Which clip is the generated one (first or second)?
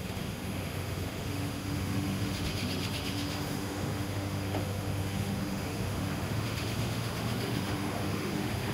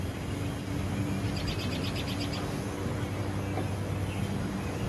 first